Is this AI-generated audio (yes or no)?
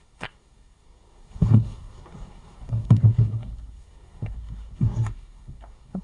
yes